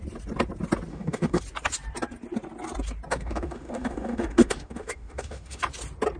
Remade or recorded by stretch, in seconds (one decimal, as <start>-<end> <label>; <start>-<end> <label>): 0.0-0.9 recorded; 0.9-1.4 remade; 1.4-3.1 recorded; 3.1-5.6 remade; 5.6-6.2 recorded

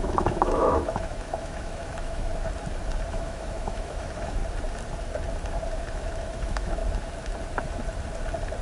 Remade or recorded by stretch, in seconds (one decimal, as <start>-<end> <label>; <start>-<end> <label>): 0.0-2.3 remade; 2.3-3.1 recorded; 3.1-4.4 remade; 4.4-5.9 recorded; 5.9-6.8 remade; 6.8-8.6 recorded

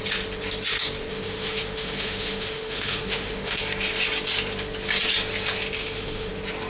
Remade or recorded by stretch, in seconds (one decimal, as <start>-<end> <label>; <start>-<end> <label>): 0.0-1.1 recorded; 1.1-3.6 remade; 3.6-5.8 recorded; 5.8-6.3 remade; 6.3-6.7 recorded